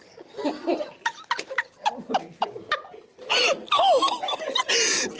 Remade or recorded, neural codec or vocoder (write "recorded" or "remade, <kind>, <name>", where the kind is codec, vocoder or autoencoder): recorded